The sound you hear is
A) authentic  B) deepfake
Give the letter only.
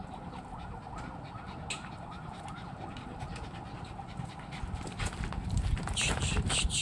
A